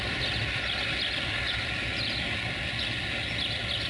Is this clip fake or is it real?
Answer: real